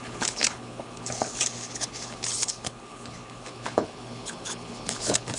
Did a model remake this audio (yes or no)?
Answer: yes